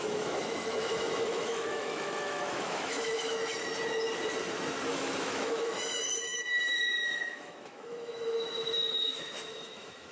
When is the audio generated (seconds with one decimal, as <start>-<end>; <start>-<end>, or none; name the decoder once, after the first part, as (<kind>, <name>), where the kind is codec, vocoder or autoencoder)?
0.0-3.5 (autoencoder, DAC-VAE); 4.9-10.1